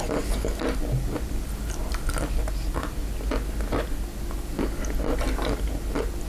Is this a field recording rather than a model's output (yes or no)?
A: yes